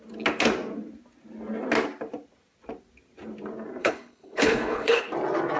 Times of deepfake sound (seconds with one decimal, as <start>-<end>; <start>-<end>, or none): 3.8-5.1